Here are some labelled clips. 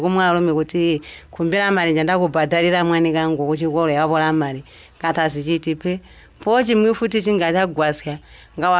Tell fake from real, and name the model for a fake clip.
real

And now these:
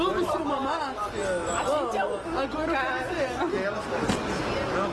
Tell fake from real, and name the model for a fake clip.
real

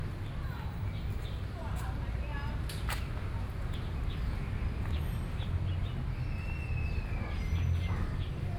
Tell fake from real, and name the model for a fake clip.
real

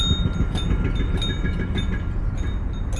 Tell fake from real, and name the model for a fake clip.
real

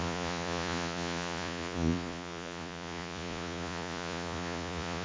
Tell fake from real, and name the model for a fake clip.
fake, vocoder, Vocos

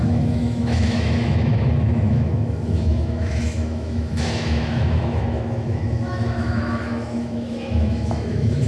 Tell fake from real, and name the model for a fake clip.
fake, autoencoder, DAC-VAE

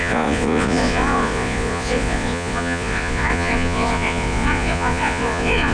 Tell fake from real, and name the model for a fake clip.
fake, vocoder, Vocos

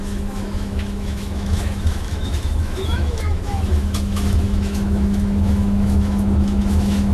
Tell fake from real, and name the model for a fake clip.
fake, autoencoder, DAC-VAE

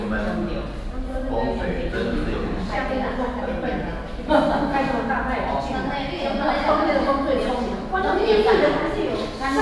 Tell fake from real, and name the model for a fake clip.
real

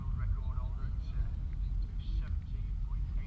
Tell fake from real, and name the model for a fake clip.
real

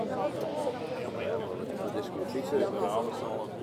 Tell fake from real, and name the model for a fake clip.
real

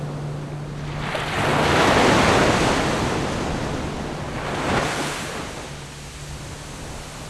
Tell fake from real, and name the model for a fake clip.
real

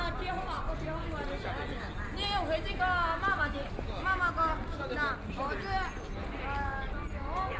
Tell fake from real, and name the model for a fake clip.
real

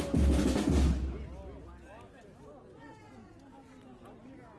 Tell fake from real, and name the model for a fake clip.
real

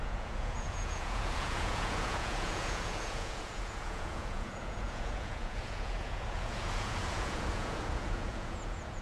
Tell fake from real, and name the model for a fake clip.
fake, vocoder, Vocos